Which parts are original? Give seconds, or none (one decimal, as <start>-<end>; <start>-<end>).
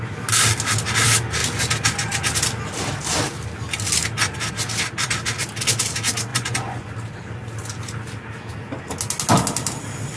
0.0-6.3; 6.9-10.2